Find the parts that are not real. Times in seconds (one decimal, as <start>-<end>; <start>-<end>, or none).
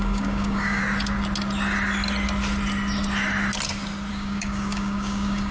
0.0-0.8; 4.1-5.5